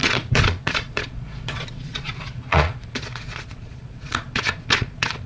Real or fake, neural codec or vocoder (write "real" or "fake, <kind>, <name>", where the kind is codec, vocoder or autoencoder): fake, vocoder, Vocos